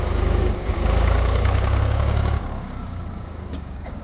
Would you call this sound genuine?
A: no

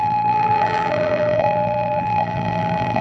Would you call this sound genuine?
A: no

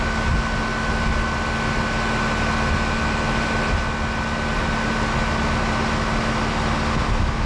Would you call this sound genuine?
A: yes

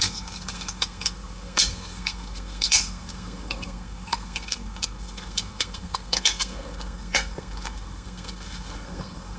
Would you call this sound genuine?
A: no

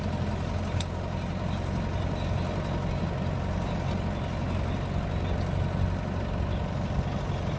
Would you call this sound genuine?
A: yes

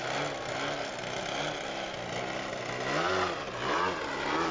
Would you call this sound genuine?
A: yes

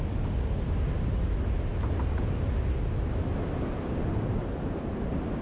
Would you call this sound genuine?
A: yes